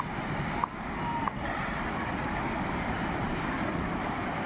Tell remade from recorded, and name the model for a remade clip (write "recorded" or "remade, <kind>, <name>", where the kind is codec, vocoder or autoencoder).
recorded